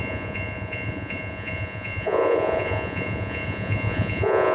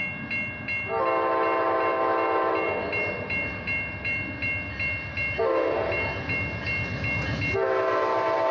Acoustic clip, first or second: second